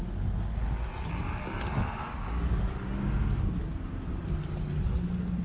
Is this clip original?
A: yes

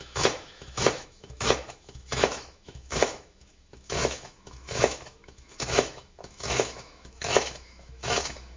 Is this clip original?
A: no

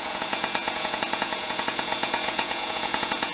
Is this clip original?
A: no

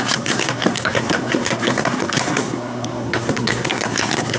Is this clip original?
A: no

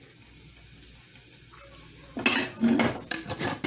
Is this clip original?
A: yes